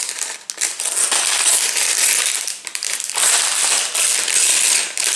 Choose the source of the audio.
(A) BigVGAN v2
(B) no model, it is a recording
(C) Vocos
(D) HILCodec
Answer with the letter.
B